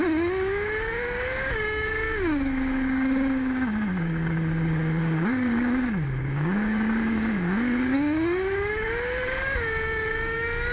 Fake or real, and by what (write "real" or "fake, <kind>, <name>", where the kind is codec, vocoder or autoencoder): fake, codec, DAC